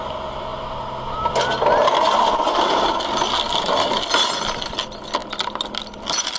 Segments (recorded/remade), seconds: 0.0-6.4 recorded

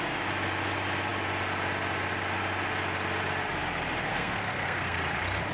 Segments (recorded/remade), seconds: 0.0-4.1 recorded; 4.1-5.0 remade; 5.0-5.5 recorded

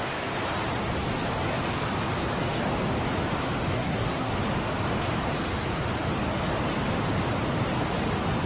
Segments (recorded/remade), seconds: 0.0-3.7 recorded; 3.7-4.3 remade; 4.3-8.5 recorded

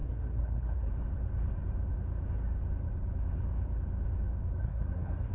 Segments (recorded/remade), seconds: 0.0-0.9 remade; 0.9-4.6 recorded; 4.6-5.3 remade

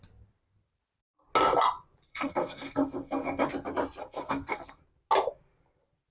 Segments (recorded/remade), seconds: 0.0-2.1 recorded; 2.1-3.5 remade; 3.5-4.0 recorded; 4.0-4.8 remade; 4.8-6.1 recorded

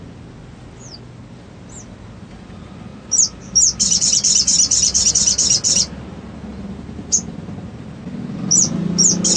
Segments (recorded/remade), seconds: 0.0-9.4 recorded